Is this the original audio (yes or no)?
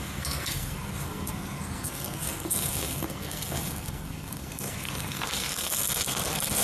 no